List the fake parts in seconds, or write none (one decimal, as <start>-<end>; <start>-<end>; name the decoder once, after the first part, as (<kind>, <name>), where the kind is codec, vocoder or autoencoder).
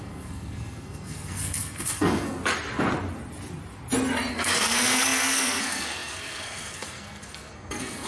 0.0-2.4 (codec, SNAC); 4.3-8.1